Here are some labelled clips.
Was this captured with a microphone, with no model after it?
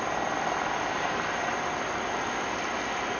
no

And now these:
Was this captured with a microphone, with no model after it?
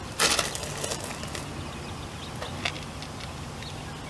yes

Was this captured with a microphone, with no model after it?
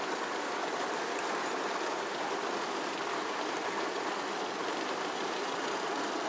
yes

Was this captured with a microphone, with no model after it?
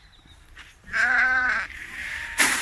no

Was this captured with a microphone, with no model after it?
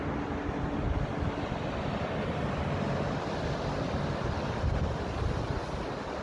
yes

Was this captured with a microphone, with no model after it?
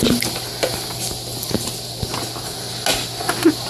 yes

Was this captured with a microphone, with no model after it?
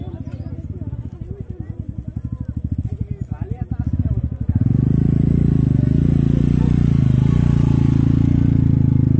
yes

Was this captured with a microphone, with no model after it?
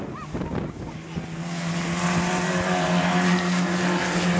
yes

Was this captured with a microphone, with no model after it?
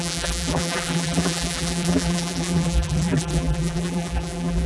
no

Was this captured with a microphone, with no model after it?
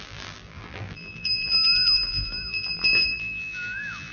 no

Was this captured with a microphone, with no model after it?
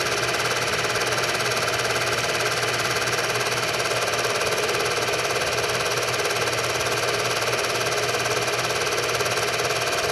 yes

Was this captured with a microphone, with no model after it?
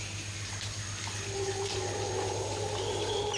no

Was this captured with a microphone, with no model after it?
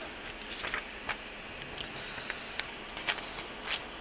yes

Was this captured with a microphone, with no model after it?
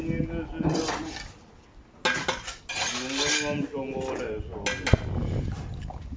yes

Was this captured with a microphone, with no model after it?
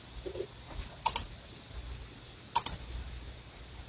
yes